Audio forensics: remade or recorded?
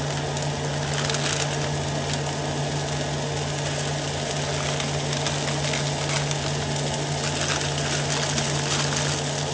recorded